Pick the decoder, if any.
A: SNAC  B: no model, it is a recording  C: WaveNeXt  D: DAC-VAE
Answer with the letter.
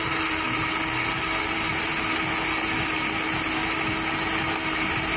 B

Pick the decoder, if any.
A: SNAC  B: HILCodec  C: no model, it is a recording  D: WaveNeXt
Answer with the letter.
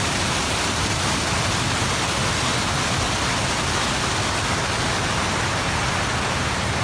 C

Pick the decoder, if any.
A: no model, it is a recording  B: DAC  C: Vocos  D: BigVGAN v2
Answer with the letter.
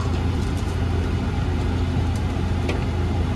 A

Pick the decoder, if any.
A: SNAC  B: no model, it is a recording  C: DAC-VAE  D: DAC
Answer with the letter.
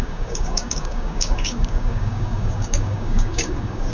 D